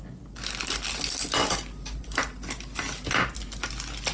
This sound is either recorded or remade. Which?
recorded